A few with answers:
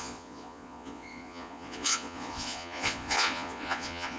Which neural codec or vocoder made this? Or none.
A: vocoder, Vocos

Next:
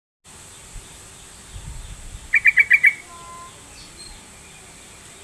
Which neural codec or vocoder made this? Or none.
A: none